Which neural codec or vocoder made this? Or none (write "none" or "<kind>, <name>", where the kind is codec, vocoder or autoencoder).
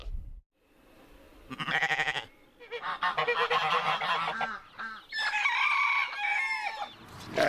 none